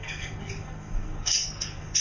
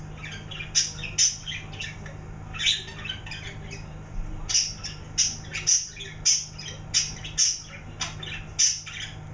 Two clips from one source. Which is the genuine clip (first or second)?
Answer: second